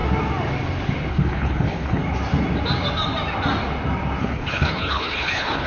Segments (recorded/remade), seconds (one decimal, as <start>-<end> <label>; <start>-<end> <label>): 0.0-1.1 recorded; 1.1-2.0 remade; 2.0-4.2 recorded; 4.2-5.7 remade